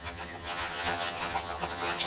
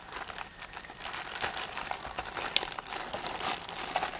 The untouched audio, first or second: second